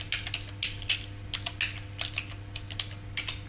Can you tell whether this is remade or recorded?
recorded